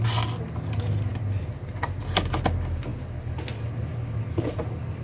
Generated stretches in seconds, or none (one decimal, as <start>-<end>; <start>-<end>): none